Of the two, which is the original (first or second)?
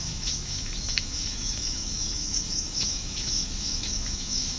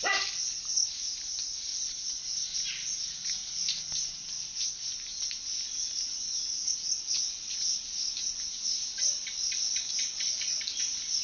second